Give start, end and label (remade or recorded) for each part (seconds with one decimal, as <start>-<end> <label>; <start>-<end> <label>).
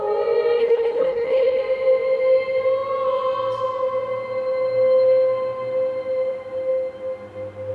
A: 0.0-0.6 recorded; 0.6-1.6 remade; 1.6-7.7 recorded